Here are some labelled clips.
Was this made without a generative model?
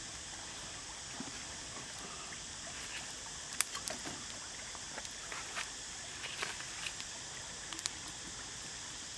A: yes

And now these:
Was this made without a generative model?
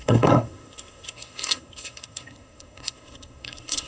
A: no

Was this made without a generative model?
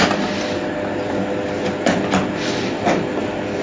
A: yes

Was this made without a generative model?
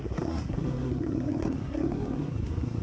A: no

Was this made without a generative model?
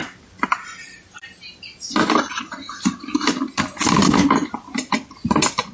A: yes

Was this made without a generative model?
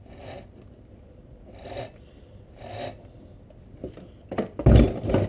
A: yes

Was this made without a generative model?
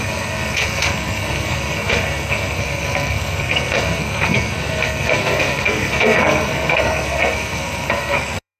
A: no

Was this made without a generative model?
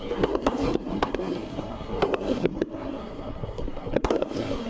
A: no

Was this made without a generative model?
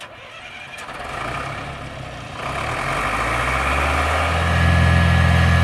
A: yes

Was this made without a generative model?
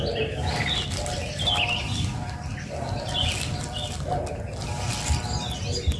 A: yes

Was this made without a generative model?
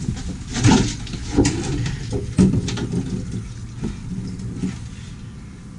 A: yes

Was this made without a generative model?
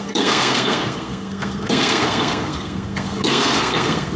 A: no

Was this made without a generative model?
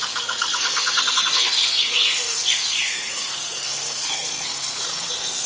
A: no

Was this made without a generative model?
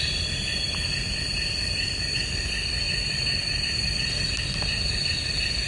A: yes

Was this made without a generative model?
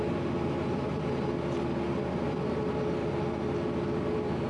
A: yes